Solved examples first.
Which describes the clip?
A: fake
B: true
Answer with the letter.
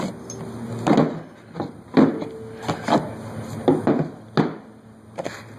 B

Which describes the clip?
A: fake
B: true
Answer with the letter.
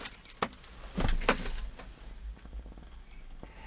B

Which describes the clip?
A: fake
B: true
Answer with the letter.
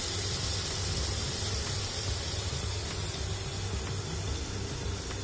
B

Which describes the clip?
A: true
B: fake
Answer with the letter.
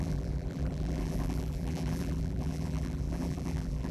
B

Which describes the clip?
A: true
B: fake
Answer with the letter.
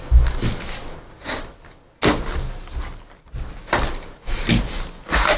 A